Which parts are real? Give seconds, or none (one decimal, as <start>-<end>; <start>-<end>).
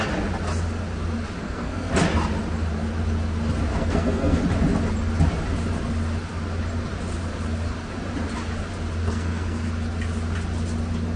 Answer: 0.0-1.4; 1.9-3.7; 4.4-9.0; 9.7-11.2